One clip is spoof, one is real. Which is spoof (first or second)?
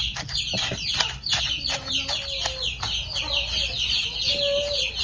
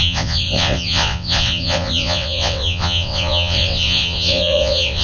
second